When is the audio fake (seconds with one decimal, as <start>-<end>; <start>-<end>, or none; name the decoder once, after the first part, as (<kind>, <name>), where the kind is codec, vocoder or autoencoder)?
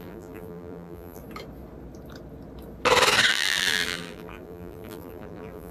0.0-1.2 (vocoder, BigVGAN v2); 3.3-5.7